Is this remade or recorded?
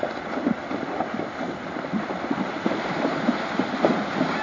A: recorded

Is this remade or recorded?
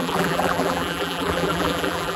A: remade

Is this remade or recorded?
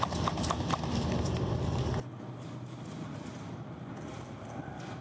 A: recorded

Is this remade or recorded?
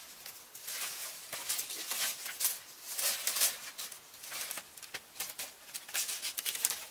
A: recorded